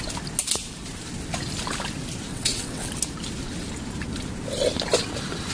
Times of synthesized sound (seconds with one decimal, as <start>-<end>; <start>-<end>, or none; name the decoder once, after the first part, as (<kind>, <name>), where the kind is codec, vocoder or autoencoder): 2.3-2.9 (vocoder, WaveNeXt)